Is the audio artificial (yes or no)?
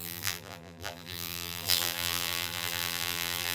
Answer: yes